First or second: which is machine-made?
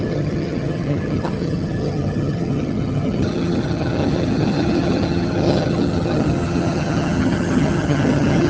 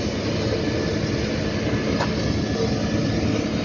first